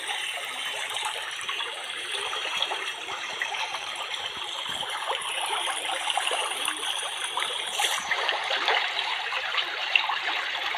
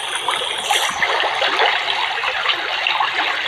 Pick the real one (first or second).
second